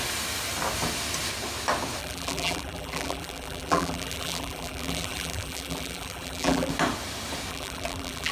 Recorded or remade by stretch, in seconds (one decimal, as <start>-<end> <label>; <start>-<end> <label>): 0.0-2.0 recorded; 2.0-6.7 remade; 6.7-7.5 recorded; 7.5-8.3 remade